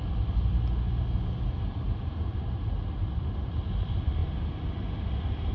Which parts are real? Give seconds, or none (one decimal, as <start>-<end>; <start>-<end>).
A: 0.0-5.5